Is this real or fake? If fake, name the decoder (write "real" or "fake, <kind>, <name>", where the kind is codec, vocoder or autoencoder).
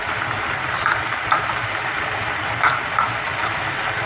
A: fake, vocoder, BigVGAN v2